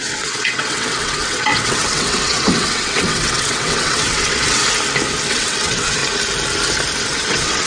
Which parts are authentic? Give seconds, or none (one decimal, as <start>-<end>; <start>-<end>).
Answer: 4.6-5.3; 6.0-7.0